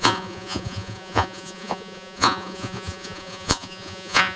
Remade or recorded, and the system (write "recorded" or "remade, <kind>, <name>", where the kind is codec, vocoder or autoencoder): remade, vocoder, Vocos